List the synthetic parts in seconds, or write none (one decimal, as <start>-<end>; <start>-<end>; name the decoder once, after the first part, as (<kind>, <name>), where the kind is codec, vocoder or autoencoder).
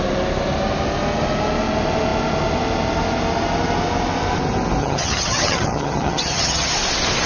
4.8-6.7 (vocoder, HiFi-GAN)